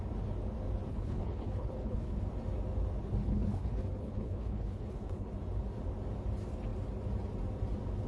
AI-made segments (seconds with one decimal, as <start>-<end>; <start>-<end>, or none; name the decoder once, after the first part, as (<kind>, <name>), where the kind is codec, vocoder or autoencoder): 0.9-2.2 (codec, HILCodec); 3.2-5.3